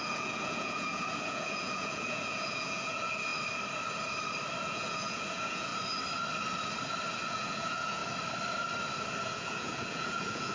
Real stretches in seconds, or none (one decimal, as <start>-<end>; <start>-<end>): 3.3-4.6; 5.7-7.1; 8.0-9.2